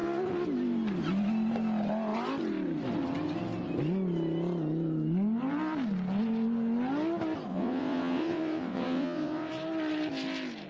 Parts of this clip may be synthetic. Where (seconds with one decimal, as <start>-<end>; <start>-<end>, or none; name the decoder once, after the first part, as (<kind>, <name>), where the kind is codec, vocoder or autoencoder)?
7.5-9.5 (vocoder, WaveNeXt)